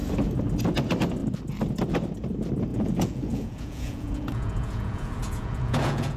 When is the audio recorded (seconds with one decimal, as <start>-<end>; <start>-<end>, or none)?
0.0-2.7